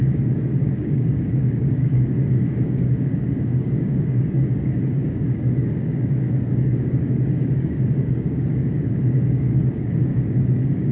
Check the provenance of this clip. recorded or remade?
remade